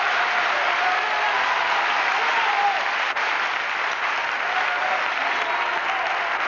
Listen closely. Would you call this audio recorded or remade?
recorded